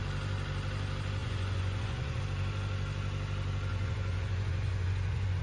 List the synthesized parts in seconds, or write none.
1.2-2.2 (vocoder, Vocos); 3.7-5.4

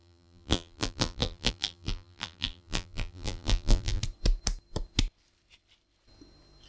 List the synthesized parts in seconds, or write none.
0.0-4.0 (vocoder, BigVGAN v2)

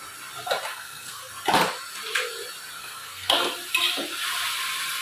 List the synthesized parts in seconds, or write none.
0.7-1.3 (codec, SNAC); 2.8-3.5

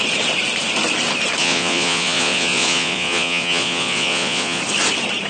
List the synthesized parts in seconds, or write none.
1.4-4.6 (vocoder, Vocos)

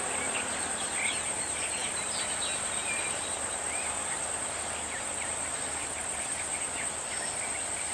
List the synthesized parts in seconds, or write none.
none

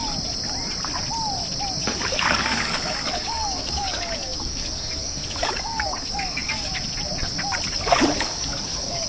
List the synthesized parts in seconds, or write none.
1.8-6.7 (codec, DAC); 7.7-9.1